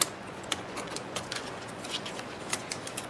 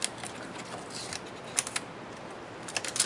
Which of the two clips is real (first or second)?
second